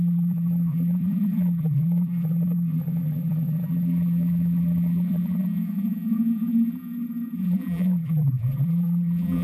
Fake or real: fake